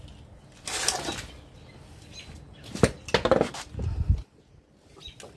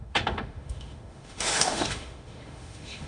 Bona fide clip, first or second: first